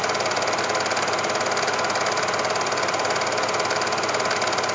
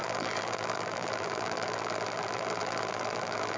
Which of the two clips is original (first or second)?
first